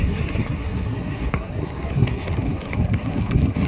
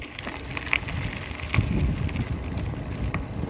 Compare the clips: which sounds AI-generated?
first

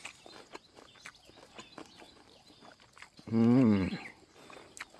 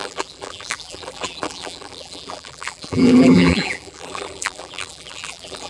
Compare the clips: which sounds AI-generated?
second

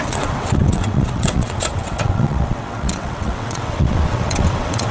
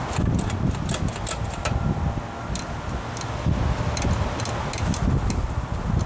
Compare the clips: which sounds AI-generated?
first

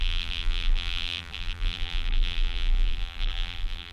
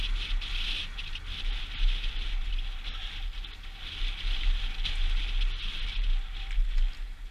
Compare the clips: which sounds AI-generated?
first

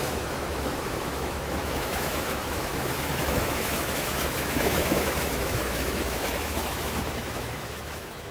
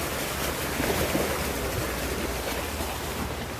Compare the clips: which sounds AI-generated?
first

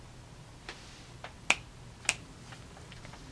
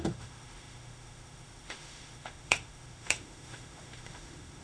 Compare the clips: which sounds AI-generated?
second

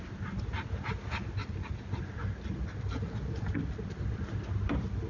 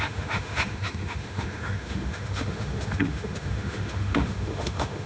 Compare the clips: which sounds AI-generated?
second